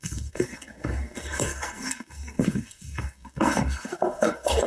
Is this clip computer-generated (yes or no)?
yes